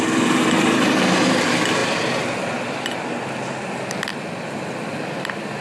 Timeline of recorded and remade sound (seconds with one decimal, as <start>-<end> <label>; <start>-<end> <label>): 0.0-5.6 recorded